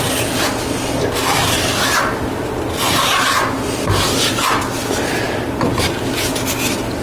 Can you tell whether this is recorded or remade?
recorded